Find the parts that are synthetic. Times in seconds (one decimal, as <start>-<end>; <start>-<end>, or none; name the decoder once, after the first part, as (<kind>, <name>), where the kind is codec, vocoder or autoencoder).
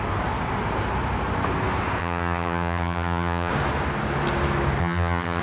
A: 2.0-3.5 (vocoder, HiFi-GAN); 4.8-5.4